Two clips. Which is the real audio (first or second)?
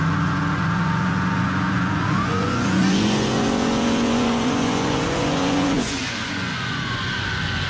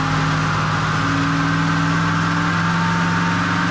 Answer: second